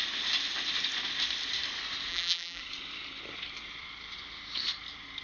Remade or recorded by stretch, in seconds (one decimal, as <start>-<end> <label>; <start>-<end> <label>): 0.0-2.1 recorded; 2.1-2.6 remade; 2.6-5.2 recorded